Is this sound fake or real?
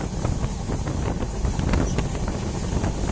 real